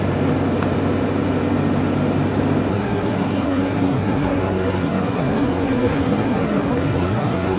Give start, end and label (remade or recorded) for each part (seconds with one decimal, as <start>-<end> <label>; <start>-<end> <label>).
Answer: 0.0-2.7 recorded; 2.7-7.6 remade

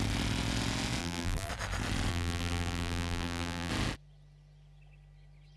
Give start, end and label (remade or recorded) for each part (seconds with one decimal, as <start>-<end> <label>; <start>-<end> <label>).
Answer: 0.0-1.0 recorded; 1.0-1.5 remade; 1.5-2.1 recorded; 2.1-3.7 remade; 3.7-5.6 recorded

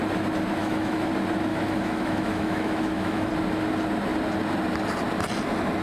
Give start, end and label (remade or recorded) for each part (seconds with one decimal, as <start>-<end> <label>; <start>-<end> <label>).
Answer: 0.0-0.6 recorded; 0.6-1.1 remade; 1.1-1.5 recorded; 1.5-3.3 remade; 3.3-5.8 recorded